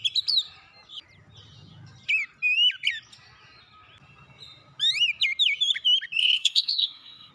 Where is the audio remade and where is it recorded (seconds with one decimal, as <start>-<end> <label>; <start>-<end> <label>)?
0.0-6.2 recorded; 6.2-7.3 remade